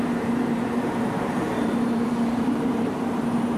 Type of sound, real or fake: fake